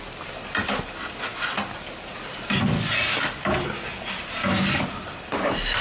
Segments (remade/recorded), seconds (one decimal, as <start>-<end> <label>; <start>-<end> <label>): 0.0-5.8 recorded